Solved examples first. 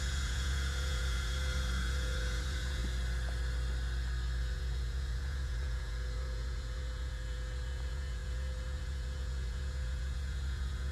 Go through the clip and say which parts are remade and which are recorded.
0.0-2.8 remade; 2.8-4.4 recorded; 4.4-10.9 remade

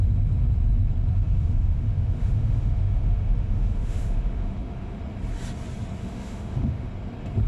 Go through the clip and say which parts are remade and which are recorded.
0.0-1.1 recorded; 1.1-5.0 remade; 5.0-6.0 recorded; 6.0-6.9 remade; 6.9-7.5 recorded

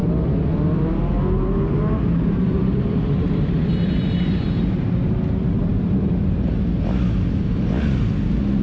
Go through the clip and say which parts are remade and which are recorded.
0.0-4.9 remade; 4.9-5.7 recorded; 5.7-6.5 remade; 6.5-8.6 recorded

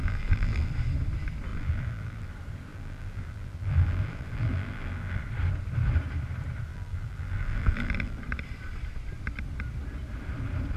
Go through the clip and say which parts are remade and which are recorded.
0.0-0.7 remade; 0.7-1.5 recorded; 1.5-2.3 remade; 2.3-2.7 recorded; 2.7-5.2 remade; 5.2-6.7 recorded; 6.7-8.2 remade; 8.2-10.8 recorded